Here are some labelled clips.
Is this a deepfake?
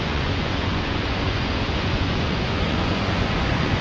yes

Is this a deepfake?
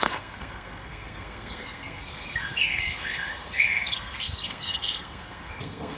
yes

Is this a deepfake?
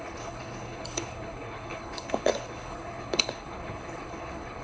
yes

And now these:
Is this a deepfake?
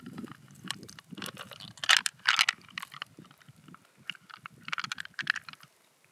no